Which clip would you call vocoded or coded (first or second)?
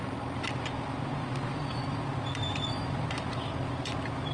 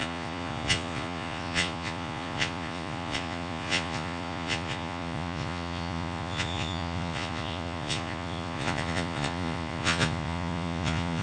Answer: second